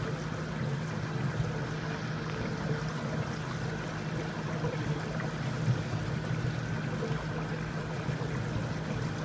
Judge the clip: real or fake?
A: real